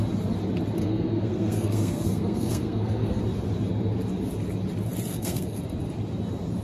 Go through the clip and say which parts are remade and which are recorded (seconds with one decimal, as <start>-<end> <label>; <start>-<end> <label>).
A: 0.0-0.8 recorded; 0.8-3.2 remade; 3.2-5.1 recorded; 5.1-5.6 remade; 5.6-6.6 recorded